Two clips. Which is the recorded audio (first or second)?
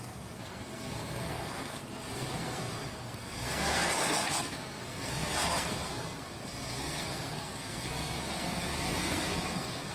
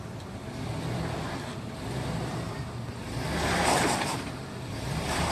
second